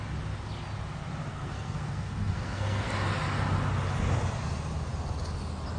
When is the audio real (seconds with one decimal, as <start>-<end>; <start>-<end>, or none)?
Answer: 0.0-1.3; 2.9-5.8